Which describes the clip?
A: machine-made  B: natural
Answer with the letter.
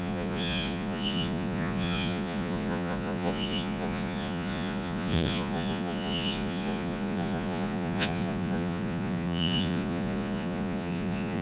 A